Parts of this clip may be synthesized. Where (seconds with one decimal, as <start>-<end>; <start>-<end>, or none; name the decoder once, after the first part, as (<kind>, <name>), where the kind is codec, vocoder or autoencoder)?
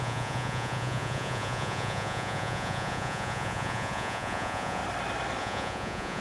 0.0-4.8 (vocoder, Vocos); 5.4-6.2